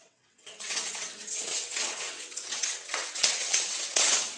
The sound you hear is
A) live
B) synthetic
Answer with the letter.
B